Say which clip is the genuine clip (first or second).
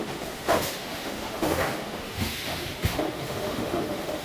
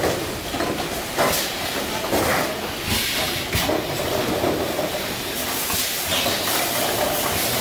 second